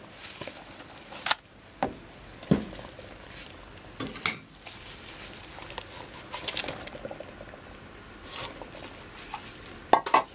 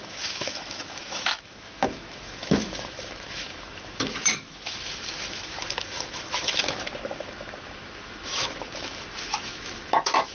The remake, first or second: second